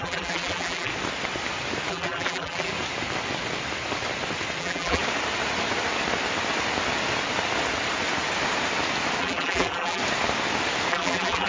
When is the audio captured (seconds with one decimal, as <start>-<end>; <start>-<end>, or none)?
0.9-1.9; 2.7-4.6; 5.0-9.2; 10.0-10.9